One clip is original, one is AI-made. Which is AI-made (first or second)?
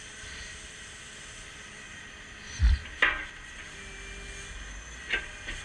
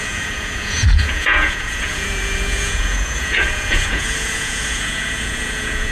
second